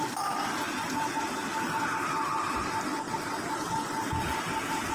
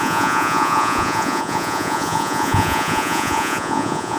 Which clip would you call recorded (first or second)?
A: first